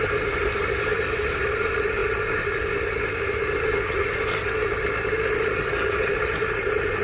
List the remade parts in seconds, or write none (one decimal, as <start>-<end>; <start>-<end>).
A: 0.0-2.0; 2.8-4.0; 5.9-7.0